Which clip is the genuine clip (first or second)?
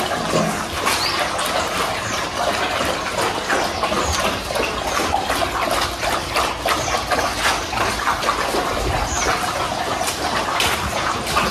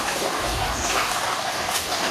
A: first